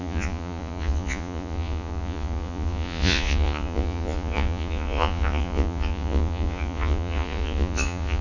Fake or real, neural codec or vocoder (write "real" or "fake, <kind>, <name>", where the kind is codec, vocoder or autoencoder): fake, vocoder, Vocos